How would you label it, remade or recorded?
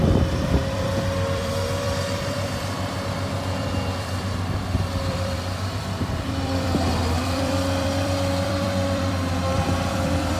remade